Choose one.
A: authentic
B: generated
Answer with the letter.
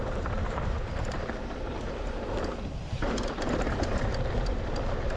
B